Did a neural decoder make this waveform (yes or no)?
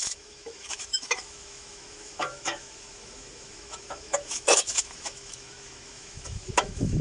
yes